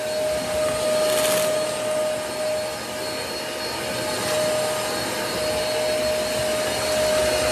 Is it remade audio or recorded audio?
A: recorded